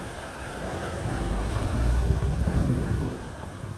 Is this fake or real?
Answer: fake